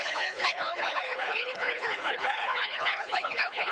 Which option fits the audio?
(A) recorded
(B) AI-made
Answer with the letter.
B